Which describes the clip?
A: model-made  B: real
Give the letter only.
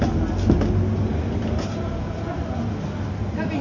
B